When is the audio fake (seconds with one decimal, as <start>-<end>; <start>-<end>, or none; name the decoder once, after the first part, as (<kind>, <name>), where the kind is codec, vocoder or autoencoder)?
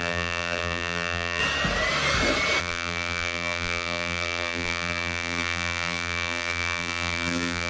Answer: 0.0-1.4 (vocoder, BigVGAN v2); 2.6-7.7